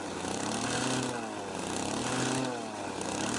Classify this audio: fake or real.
real